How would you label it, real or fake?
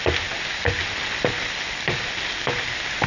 real